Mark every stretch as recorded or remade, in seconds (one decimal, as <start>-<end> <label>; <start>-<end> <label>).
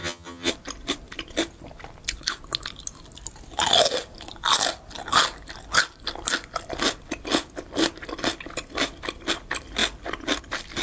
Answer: 0.0-0.5 remade; 0.5-10.8 recorded